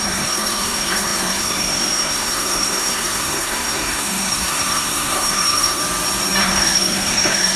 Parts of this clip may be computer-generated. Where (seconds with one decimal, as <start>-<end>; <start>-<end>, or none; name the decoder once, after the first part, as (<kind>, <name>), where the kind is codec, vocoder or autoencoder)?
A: 0.0-5.8 (codec, SNAC); 6.4-7.6